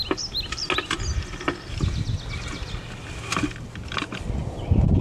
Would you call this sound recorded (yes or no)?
yes